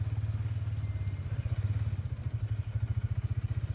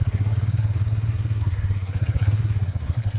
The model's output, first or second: second